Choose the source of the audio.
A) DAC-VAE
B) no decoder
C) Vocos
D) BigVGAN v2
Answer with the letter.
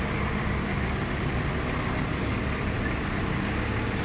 B